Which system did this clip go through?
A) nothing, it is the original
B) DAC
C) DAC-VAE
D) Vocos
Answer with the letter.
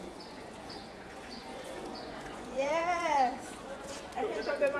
D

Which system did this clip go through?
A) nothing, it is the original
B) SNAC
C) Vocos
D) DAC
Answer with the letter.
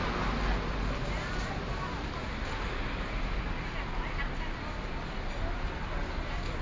A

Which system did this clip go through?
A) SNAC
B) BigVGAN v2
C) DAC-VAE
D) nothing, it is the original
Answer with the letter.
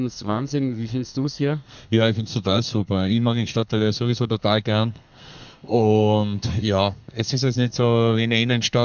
A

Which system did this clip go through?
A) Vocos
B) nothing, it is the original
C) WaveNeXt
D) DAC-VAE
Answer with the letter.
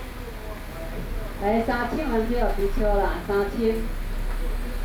B